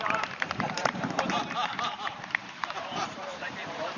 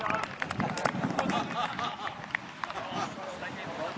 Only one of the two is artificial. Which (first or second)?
first